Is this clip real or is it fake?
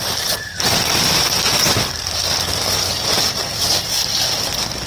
real